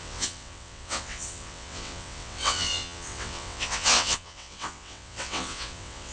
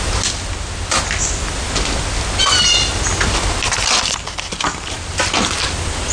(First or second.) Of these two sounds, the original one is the second